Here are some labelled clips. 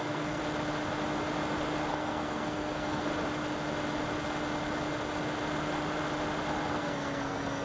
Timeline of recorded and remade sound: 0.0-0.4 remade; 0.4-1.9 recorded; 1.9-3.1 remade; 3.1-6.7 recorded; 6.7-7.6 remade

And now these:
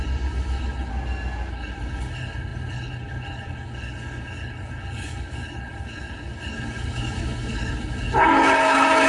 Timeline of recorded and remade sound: 0.0-0.9 remade; 0.9-1.5 recorded; 1.5-9.1 remade

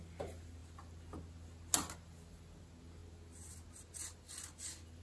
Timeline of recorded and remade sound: 0.0-5.0 recorded

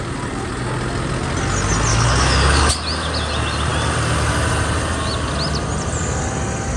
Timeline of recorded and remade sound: 0.0-1.9 recorded; 1.9-2.7 remade; 2.7-6.8 recorded